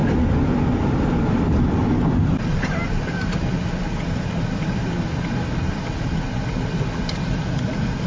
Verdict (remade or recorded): recorded